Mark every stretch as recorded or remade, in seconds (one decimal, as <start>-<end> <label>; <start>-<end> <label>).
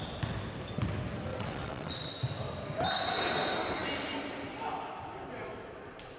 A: 0.0-1.3 recorded; 1.3-1.9 remade; 1.9-6.2 recorded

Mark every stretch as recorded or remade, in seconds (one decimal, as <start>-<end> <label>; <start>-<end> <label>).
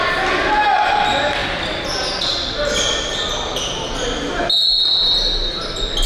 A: 0.0-6.1 recorded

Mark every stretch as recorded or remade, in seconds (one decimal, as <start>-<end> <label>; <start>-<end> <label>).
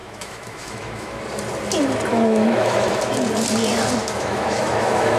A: 0.0-1.2 remade; 1.2-2.1 recorded; 2.1-2.9 remade; 2.9-4.0 recorded; 4.0-5.2 remade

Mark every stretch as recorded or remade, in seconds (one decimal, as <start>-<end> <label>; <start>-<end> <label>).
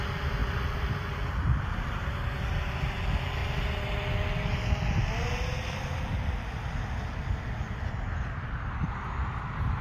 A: 0.0-9.8 recorded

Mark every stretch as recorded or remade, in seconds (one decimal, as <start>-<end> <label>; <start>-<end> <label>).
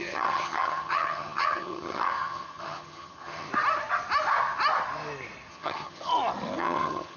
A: 0.0-3.5 remade; 3.5-5.5 recorded; 5.5-6.1 remade; 6.1-6.6 recorded; 6.6-7.2 remade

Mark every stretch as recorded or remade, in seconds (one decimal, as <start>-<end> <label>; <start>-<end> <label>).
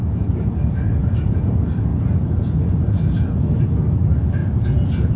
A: 0.0-1.0 recorded; 1.0-1.5 remade; 1.5-1.9 recorded; 1.9-3.6 remade; 3.6-4.4 recorded; 4.4-5.2 remade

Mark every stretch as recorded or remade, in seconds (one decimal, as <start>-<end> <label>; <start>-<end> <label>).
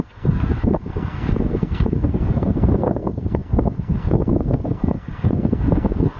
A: 0.0-6.2 remade